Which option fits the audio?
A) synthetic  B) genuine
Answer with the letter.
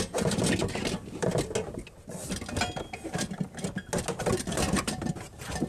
B